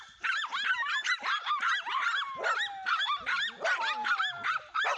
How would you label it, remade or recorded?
recorded